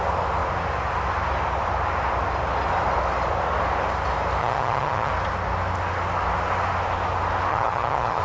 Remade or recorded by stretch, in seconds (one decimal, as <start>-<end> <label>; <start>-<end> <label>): 0.0-4.4 recorded; 4.4-5.1 remade; 5.1-7.5 recorded; 7.5-8.2 remade